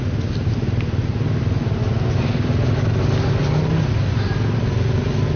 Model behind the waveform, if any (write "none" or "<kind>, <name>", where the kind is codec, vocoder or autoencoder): none